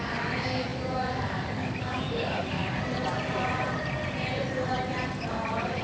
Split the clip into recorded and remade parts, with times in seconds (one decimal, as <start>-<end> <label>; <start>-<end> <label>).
0.0-2.6 remade; 2.6-5.3 recorded; 5.3-5.8 remade

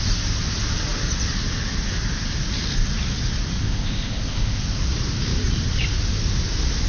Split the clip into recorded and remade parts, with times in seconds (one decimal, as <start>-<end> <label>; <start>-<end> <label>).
0.0-3.6 recorded; 3.6-4.6 remade; 4.6-6.9 recorded

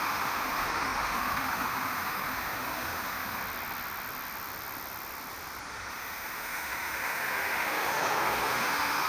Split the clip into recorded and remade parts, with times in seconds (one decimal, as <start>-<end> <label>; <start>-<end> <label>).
0.0-3.4 remade; 3.4-5.7 recorded; 5.7-9.1 remade

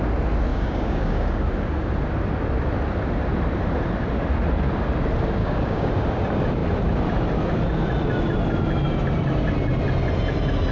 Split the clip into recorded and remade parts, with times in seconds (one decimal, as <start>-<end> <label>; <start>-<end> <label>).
0.0-0.5 recorded; 0.5-1.4 remade; 1.4-5.4 recorded; 5.4-5.9 remade; 5.9-10.7 recorded

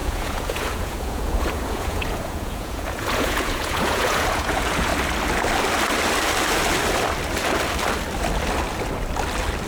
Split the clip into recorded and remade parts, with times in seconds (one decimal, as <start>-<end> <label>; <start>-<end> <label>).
0.0-4.9 remade; 4.9-9.7 recorded